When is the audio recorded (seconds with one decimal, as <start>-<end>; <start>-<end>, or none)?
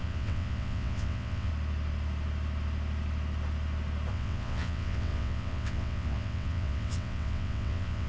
1.5-4.1